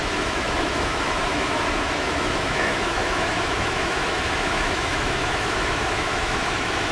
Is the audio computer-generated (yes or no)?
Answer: yes